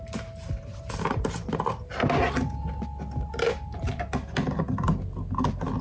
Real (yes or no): yes